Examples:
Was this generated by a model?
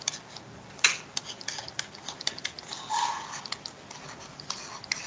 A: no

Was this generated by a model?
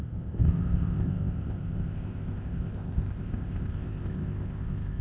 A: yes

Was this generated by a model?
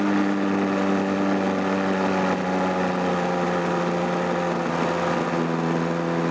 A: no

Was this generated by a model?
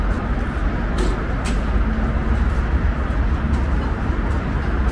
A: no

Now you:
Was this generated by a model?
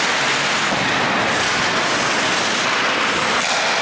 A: no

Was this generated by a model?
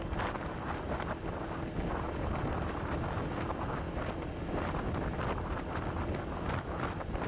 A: no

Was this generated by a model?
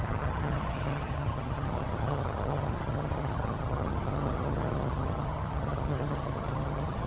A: yes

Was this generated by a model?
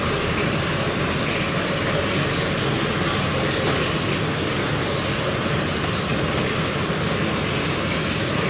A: no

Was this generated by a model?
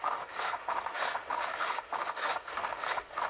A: yes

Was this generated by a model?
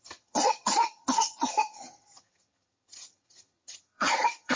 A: yes